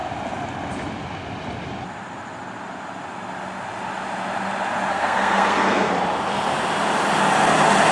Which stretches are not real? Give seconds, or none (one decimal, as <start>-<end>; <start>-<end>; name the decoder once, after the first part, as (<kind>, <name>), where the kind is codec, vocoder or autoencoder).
4.9-5.9 (codec, SNAC)